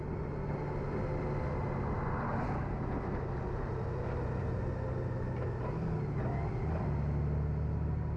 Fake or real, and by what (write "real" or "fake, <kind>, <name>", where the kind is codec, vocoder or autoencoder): real